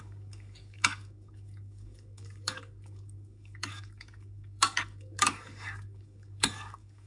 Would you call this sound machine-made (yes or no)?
yes